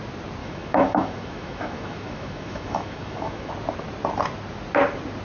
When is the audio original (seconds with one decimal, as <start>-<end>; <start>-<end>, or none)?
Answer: 0.0-0.4; 3.5-5.2